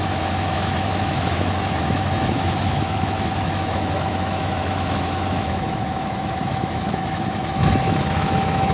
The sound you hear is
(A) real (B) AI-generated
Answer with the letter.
B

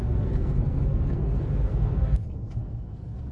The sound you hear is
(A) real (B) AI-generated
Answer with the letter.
B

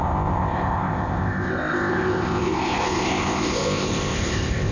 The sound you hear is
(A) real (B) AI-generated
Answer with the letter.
B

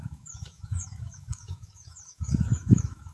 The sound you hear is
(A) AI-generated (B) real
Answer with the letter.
A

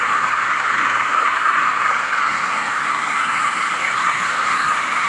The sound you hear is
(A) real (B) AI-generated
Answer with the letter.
B